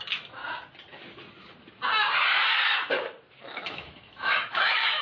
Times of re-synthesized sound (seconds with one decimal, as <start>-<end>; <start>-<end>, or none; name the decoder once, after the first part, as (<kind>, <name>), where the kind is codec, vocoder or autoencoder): 0.0-0.4 (autoencoder, DAC-VAE); 3.4-5.0